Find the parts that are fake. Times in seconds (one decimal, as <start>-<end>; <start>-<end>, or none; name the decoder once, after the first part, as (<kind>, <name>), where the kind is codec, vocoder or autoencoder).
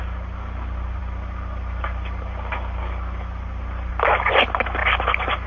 none